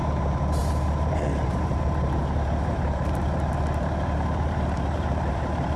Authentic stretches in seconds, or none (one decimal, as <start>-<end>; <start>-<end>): none